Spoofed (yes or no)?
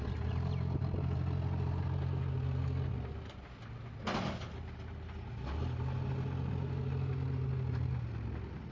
no